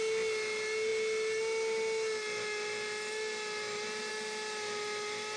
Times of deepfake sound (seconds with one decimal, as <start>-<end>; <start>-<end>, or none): none